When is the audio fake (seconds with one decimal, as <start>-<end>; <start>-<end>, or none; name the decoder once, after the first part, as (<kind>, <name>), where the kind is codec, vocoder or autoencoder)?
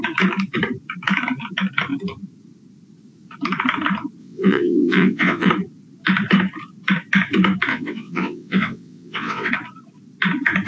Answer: 4.2-5.5 (vocoder, WaveNeXt); 7.7-9.5